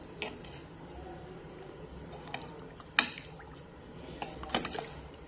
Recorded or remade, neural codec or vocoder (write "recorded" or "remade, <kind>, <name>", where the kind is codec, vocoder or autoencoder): recorded